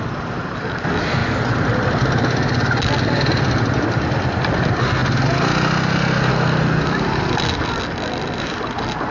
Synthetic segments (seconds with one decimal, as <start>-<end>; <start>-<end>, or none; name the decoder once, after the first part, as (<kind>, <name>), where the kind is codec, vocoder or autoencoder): none